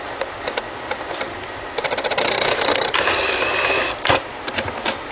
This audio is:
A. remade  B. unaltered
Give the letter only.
B